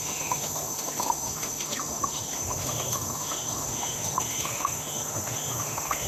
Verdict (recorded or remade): remade